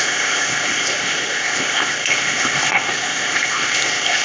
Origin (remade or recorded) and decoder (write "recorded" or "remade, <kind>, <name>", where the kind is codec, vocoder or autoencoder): remade, codec, ZipCodec